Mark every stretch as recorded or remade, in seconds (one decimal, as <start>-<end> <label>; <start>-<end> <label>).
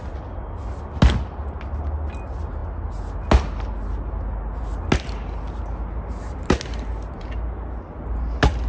0.0-8.7 recorded